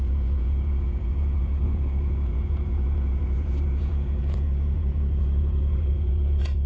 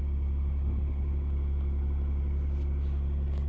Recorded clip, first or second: second